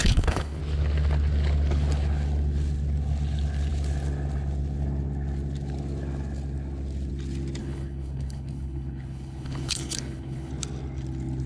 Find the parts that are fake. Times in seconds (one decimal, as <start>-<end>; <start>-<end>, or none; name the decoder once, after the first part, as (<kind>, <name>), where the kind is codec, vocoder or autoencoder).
0.0-0.6 (codec, HILCodec); 7.6-10.5